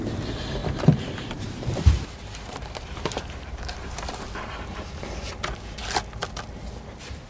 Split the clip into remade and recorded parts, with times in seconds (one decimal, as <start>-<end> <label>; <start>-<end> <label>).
0.0-0.6 recorded; 0.6-4.1 remade; 4.1-7.3 recorded